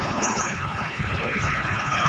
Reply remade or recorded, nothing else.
remade